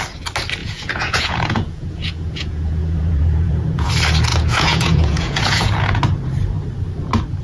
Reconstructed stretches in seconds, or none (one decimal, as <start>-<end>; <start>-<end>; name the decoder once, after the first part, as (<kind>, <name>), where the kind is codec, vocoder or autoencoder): 0.6-3.9 (vocoder, Vocos); 4.3-6.0